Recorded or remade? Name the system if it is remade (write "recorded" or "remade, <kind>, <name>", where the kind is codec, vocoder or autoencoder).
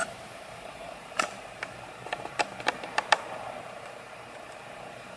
remade, vocoder, BigVGAN v2